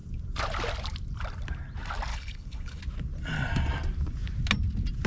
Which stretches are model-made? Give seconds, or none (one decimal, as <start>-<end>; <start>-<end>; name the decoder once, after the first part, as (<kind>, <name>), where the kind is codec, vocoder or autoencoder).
2.1-2.8 (codec, HILCodec)